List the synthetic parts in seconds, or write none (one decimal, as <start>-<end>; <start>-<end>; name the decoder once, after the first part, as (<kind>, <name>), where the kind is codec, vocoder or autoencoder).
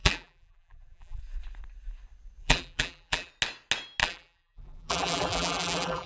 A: 0.0-1.2 (vocoder, BigVGAN v2); 2.4-3.3; 4.0-6.1